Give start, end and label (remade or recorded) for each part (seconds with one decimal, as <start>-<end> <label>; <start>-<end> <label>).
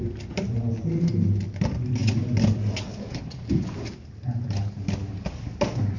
0.0-6.0 recorded